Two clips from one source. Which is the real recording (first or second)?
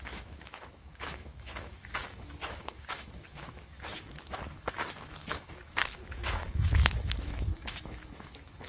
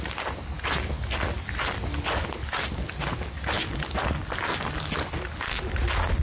second